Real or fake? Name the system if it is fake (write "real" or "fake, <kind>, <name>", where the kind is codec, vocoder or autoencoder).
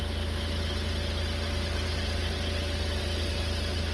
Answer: real